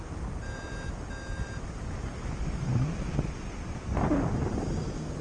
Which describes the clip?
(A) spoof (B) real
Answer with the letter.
B